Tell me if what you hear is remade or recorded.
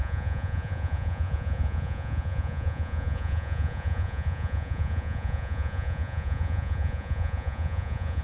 remade